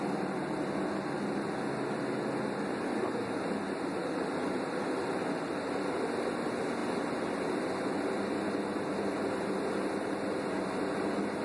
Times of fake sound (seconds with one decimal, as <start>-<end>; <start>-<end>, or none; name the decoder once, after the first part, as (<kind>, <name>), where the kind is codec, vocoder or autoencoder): 4.0-6.1 (vocoder, BigVGAN v2)